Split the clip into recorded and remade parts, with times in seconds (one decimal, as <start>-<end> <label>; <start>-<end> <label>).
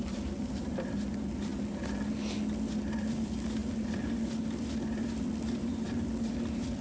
0.0-1.5 remade; 1.5-3.1 recorded; 3.1-6.8 remade